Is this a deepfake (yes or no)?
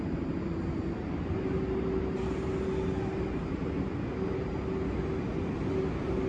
no